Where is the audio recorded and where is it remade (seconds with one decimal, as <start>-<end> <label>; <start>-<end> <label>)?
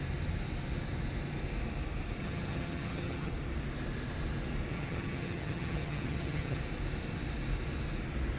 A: 0.0-2.2 recorded; 2.2-3.3 remade; 3.3-4.7 recorded; 4.7-6.6 remade; 6.6-8.4 recorded